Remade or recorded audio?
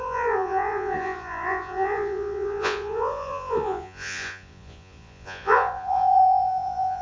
remade